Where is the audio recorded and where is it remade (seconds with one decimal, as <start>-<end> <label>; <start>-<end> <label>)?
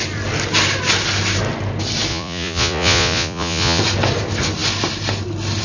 0.0-2.1 recorded; 2.1-3.8 remade; 3.8-5.6 recorded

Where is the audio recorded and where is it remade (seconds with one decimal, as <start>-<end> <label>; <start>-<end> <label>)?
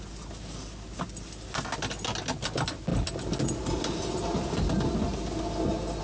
0.0-6.0 recorded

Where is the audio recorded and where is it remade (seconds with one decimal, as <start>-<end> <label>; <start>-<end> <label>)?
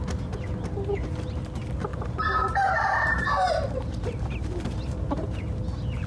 0.0-1.9 recorded; 1.9-5.6 remade; 5.6-6.1 recorded